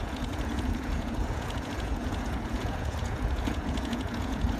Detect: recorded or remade remade